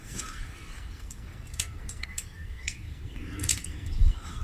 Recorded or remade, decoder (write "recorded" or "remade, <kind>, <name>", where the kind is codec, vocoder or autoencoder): remade, codec, SNAC